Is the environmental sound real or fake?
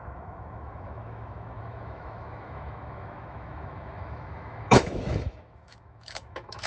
fake